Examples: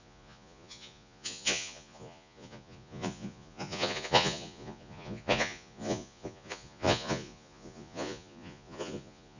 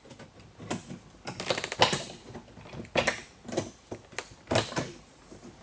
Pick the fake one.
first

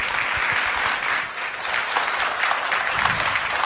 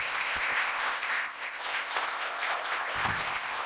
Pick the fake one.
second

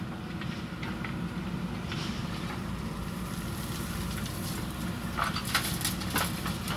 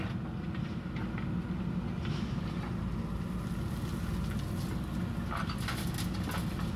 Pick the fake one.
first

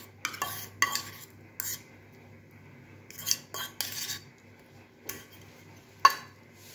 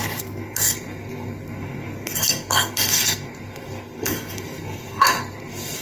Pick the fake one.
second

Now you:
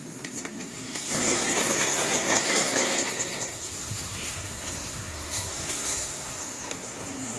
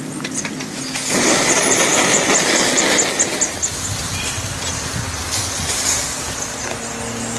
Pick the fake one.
first